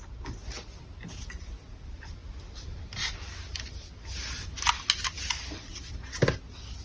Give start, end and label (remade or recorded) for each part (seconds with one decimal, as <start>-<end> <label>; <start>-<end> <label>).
0.0-6.8 recorded